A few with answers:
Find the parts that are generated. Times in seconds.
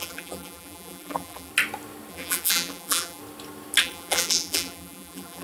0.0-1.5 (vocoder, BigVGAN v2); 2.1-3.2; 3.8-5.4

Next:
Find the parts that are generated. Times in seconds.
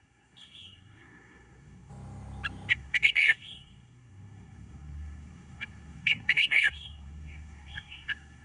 0.0-1.9 (codec, SNAC); 2.7-8.4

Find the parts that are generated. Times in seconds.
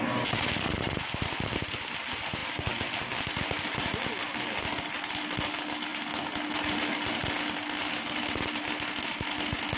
none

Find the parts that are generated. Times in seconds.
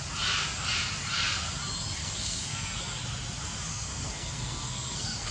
2.0-2.8 (codec, SNAC); 3.7-5.3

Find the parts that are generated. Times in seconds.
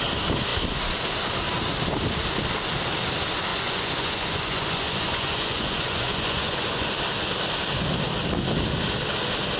3.5-6.9 (vocoder, Vocos)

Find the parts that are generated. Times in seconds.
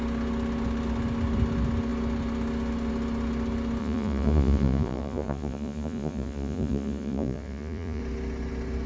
3.8-8.0 (vocoder, Vocos)